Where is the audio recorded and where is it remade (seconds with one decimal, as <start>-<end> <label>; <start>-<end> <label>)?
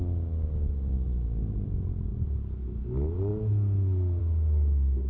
0.0-5.1 recorded